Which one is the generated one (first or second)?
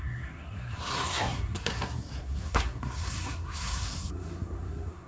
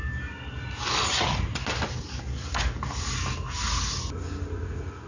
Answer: first